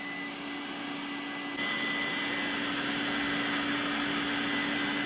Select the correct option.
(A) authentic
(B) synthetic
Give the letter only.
A